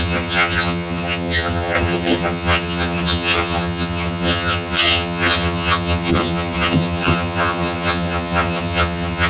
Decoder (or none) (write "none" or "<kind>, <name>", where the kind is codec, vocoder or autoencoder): vocoder, HiFi-GAN